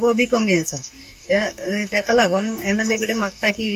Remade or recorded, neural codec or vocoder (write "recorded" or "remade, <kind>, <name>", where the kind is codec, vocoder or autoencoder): remade, codec, DAC